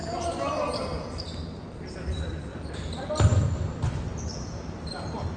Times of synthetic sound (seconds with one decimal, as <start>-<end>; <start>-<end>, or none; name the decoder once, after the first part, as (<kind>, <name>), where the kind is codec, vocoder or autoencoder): 0.5-5.4 (vocoder, BigVGAN v2)